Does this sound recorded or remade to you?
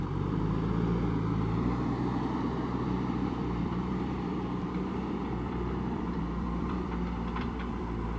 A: remade